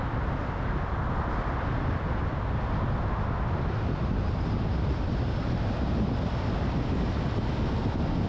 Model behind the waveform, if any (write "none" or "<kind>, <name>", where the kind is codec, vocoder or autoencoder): none